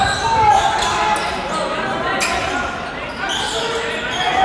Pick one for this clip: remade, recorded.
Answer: recorded